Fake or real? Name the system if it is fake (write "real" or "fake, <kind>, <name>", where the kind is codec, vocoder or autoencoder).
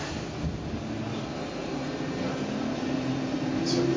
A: real